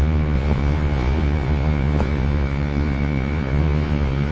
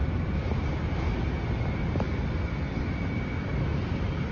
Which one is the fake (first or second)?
first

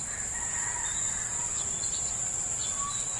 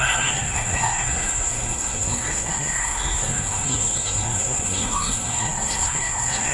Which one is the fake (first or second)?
second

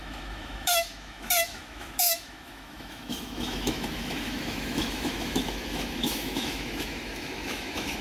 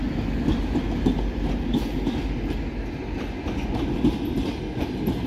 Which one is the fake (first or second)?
first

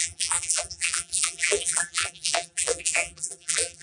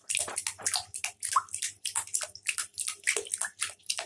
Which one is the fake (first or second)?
first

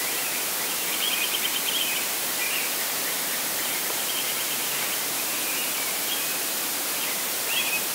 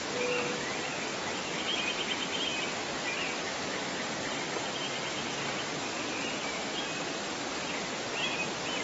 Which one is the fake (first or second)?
first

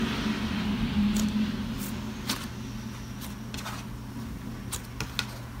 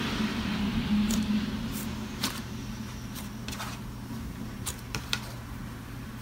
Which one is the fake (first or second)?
second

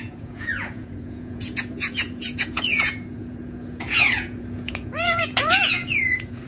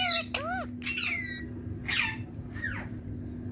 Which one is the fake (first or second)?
first